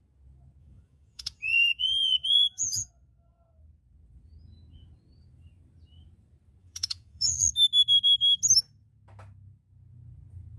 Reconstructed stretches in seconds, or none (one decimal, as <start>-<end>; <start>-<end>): 0.6-2.9; 6.6-7.3